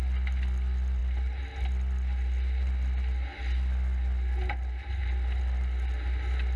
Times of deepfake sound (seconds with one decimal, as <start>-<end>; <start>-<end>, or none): none